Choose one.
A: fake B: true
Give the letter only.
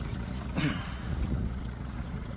A